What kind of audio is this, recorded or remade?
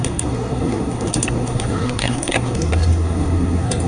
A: remade